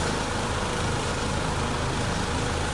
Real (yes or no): yes